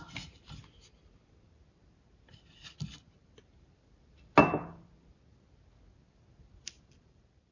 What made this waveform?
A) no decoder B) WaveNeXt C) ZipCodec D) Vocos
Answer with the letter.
A